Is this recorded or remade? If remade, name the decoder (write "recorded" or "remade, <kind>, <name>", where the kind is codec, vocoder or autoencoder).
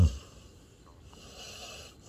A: recorded